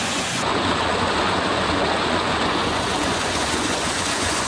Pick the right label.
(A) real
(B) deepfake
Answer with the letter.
B